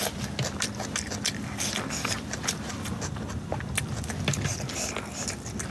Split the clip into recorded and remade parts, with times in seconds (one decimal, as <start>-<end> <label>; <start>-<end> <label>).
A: 0.0-5.7 recorded